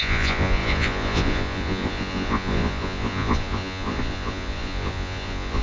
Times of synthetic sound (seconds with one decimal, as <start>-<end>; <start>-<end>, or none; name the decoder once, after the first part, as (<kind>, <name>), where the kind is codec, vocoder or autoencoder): 0.0-5.6 (vocoder, Vocos)